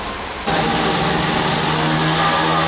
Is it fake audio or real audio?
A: real